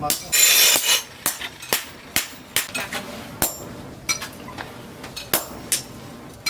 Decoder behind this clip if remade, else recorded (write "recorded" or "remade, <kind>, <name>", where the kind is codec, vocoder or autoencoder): recorded